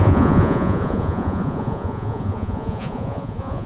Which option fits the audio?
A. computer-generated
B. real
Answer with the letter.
A